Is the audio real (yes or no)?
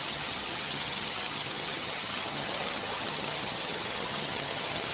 no